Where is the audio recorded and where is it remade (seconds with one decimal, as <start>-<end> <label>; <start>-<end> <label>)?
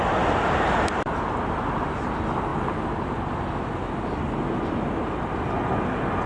0.0-6.3 recorded